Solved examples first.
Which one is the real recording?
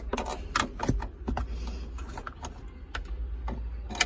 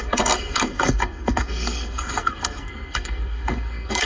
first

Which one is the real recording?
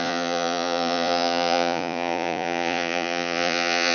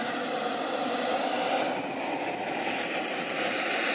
second